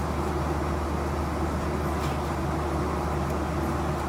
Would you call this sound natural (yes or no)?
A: yes